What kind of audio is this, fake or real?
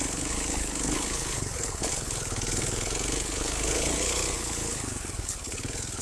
fake